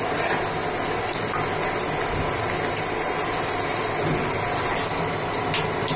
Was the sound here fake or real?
real